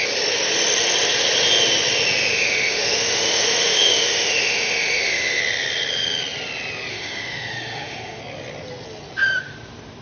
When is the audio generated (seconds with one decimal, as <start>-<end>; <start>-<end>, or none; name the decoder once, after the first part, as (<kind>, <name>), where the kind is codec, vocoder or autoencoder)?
2.3-5.4 (autoencoder, DAC-VAE); 6.9-8.2